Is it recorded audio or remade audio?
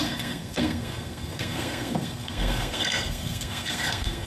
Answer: remade